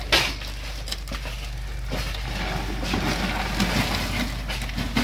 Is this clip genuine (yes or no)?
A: yes